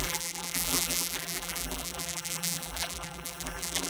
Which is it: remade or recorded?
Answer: remade